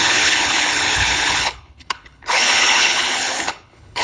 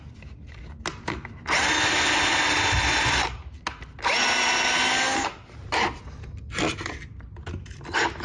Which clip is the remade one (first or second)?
first